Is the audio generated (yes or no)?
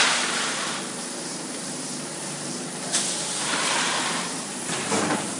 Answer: yes